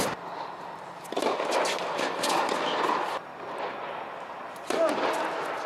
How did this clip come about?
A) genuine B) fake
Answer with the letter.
A